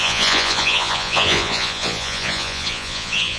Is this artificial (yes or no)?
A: yes